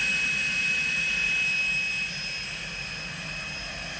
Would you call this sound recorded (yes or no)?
yes